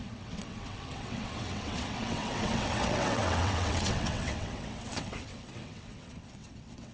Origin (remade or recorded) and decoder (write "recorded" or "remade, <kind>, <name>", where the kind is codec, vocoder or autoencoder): remade, vocoder, WaveNeXt